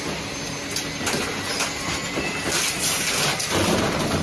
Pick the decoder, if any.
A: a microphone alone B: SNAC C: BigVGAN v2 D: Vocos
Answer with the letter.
A